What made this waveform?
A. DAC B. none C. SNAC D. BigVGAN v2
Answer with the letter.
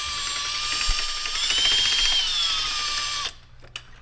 B